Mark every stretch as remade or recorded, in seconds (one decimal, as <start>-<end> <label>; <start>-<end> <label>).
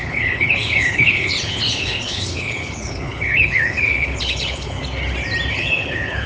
0.0-4.8 remade; 4.8-5.5 recorded; 5.5-6.3 remade